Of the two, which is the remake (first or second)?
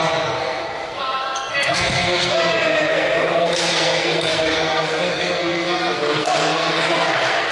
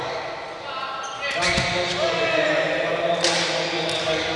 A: first